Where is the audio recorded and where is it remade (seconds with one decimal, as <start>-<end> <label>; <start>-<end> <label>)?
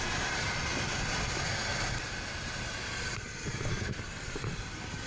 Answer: 0.0-5.1 recorded